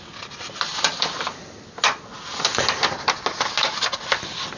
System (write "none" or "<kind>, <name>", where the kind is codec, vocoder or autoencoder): none